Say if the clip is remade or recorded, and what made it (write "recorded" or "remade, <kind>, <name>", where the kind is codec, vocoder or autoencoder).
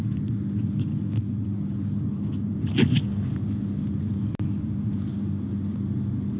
recorded